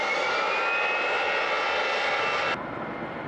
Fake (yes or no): no